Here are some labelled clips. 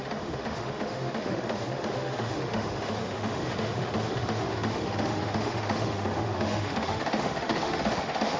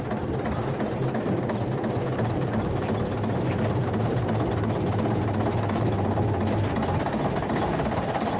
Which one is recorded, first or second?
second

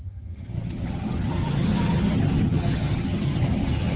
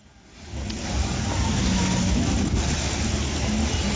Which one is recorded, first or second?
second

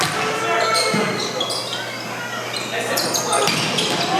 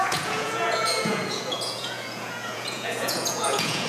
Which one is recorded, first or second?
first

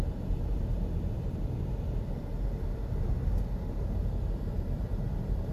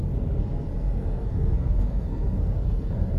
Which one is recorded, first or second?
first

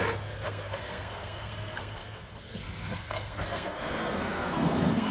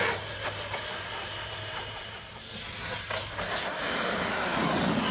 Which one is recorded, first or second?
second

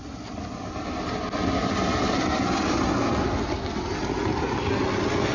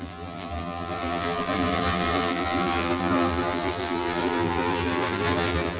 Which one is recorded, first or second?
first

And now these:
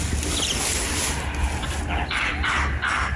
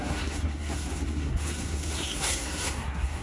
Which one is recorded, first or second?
first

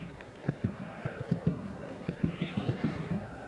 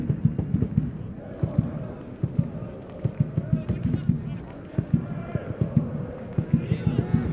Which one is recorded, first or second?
second